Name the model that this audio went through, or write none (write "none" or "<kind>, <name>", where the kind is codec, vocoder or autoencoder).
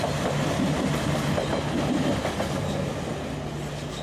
none